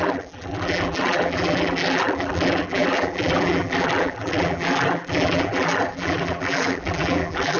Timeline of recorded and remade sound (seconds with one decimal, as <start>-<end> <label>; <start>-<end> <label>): 0.0-7.6 remade